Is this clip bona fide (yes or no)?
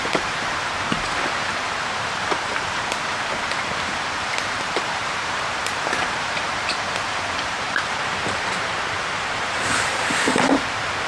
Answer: no